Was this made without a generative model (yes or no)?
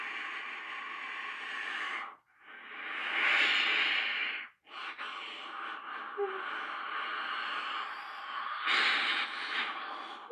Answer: yes